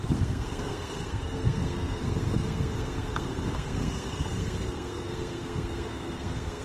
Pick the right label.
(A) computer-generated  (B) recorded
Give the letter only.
A